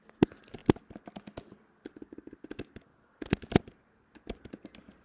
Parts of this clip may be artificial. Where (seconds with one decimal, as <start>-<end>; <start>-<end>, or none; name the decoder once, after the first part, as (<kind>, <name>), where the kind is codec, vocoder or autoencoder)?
none

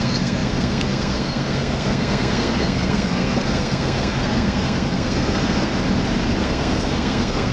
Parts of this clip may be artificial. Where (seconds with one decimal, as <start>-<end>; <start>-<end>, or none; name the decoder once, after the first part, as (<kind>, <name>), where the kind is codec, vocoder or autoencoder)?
0.0-5.7 (codec, SNAC); 6.4-7.5

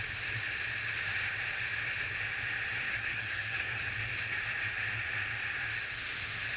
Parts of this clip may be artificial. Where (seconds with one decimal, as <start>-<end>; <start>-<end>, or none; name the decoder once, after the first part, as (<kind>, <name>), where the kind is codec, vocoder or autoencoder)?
2.9-3.8 (codec, SNAC)

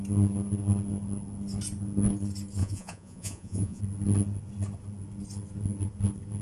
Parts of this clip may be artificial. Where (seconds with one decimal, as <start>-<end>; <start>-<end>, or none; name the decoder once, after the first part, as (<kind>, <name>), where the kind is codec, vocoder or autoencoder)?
2.6-3.8 (vocoder, Vocos)

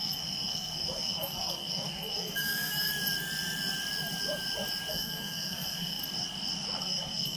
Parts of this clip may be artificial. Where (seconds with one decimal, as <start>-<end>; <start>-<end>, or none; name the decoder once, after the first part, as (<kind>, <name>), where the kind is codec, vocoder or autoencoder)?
0.0-2.9 (codec, SNAC); 4.9-6.0; 6.8-7.4

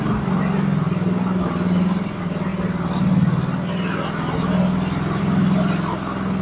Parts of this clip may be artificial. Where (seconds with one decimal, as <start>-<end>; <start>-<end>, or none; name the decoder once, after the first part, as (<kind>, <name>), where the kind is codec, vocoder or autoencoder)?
none